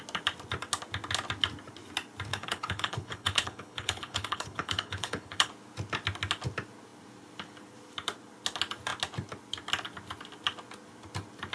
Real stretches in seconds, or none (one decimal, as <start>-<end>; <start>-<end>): 0.0-2.3; 5.5-11.5